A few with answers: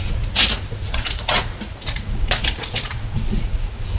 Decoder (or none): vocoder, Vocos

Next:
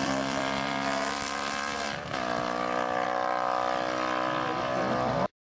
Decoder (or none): vocoder, BigVGAN v2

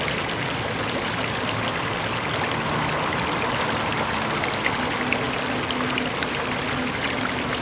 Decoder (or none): none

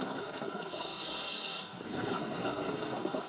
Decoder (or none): codec, SNAC